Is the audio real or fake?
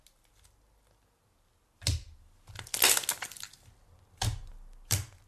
real